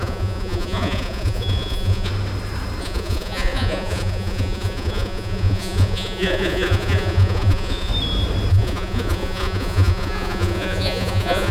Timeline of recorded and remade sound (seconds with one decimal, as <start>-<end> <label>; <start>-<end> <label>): 0.0-2.1 remade; 2.1-2.8 recorded; 2.8-7.9 remade; 7.9-8.5 recorded; 8.5-11.5 remade

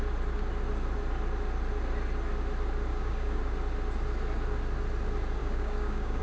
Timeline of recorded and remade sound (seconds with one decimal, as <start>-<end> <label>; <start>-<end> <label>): 0.0-2.9 recorded; 2.9-3.4 remade; 3.4-5.4 recorded; 5.4-6.2 remade

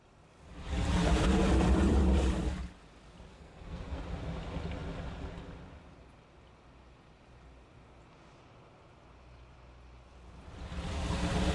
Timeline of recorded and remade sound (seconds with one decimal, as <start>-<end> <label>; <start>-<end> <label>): 0.0-3.3 recorded; 3.3-4.0 remade; 4.0-11.5 recorded

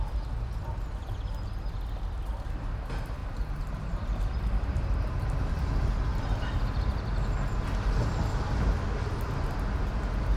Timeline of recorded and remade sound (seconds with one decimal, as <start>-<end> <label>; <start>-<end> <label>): 0.0-3.2 recorded; 3.2-5.5 remade; 5.5-6.1 recorded; 6.1-6.8 remade; 6.8-10.4 recorded

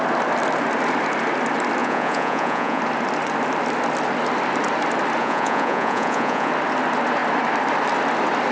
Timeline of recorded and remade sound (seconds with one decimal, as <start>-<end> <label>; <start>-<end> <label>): 0.0-1.8 recorded; 1.8-2.8 remade; 2.8-5.2 recorded; 5.2-6.5 remade; 6.5-8.5 recorded

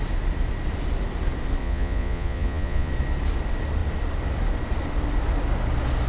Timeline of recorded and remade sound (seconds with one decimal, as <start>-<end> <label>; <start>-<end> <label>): 0.0-1.6 recorded; 1.6-2.9 remade; 2.9-6.1 recorded

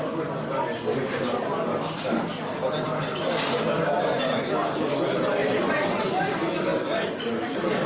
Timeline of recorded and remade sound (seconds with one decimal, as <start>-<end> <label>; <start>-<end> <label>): 0.0-7.9 recorded

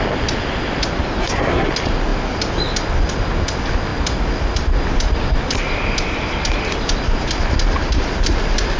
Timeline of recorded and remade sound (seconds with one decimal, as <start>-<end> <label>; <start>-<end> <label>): 0.0-1.2 recorded; 1.2-1.7 remade; 1.7-8.8 recorded